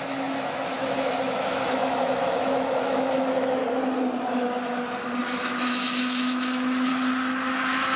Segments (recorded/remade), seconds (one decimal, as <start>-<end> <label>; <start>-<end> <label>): 0.0-3.6 remade; 3.6-5.2 recorded; 5.2-6.9 remade; 6.9-8.0 recorded